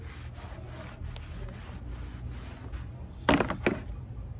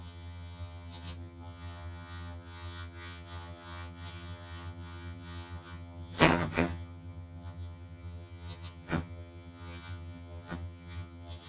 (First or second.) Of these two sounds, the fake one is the second